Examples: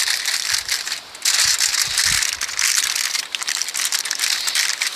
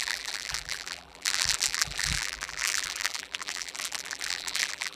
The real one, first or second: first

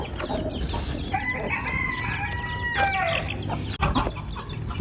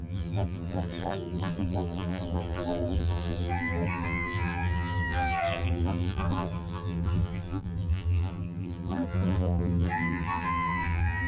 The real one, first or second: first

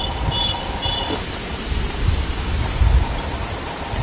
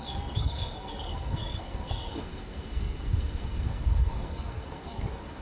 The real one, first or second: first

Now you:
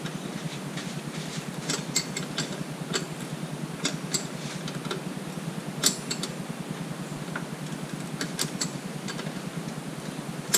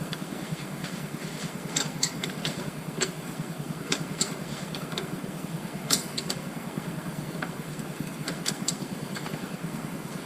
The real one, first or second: first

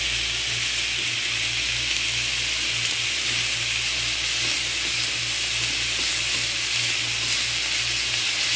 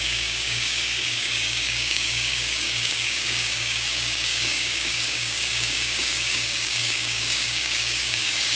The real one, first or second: first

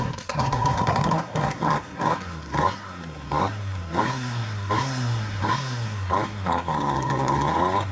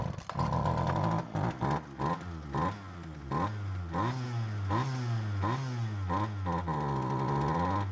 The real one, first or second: second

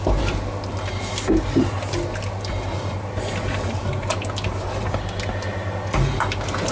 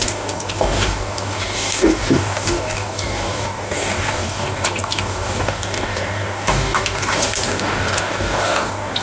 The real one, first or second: first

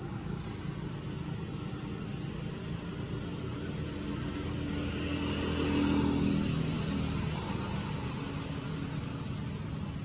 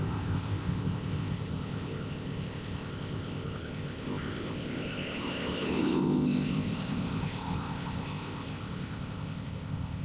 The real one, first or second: first